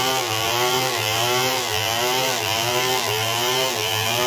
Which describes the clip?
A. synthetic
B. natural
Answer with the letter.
A